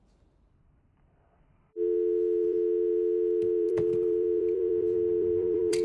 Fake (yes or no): yes